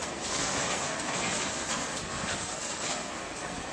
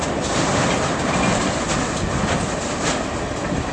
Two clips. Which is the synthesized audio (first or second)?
first